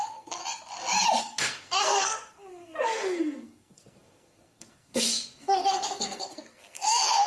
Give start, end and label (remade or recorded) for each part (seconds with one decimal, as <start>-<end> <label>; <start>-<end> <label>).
0.0-0.4 remade; 0.4-1.2 recorded; 1.2-7.3 remade

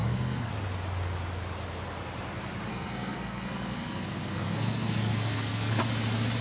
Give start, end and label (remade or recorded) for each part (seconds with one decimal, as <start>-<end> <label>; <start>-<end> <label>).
0.0-0.5 remade; 0.5-2.7 recorded; 2.7-5.8 remade; 5.8-6.4 recorded

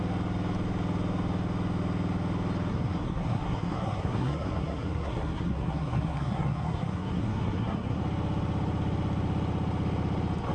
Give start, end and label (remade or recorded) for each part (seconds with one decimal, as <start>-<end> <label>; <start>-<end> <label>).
0.0-2.7 recorded; 2.7-8.0 remade; 8.0-10.5 recorded

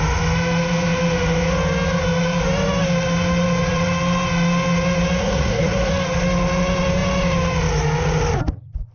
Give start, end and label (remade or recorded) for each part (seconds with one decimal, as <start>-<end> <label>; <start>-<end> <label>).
0.0-5.2 recorded; 5.2-5.9 remade; 5.9-8.9 recorded

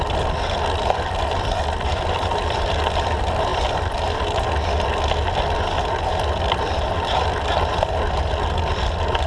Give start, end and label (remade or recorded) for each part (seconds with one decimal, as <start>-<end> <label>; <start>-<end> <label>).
0.0-9.3 recorded

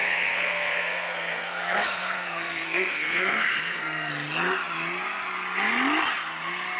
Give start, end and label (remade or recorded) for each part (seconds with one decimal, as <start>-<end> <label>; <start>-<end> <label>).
0.0-4.1 remade; 4.1-6.8 recorded

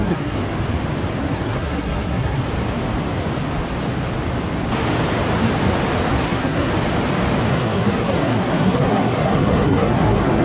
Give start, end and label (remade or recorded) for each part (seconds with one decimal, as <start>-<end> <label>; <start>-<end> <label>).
0.0-0.4 remade; 0.4-1.2 recorded; 1.2-2.4 remade; 2.4-6.1 recorded; 6.1-6.7 remade; 6.7-7.5 recorded; 7.5-10.4 remade